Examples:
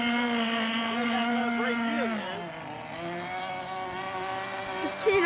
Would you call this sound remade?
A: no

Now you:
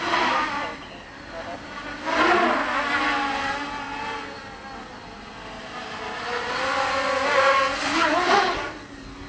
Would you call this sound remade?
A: no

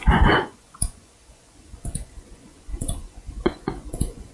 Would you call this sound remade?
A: yes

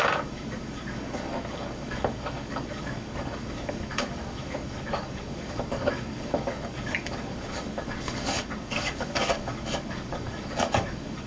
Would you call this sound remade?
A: yes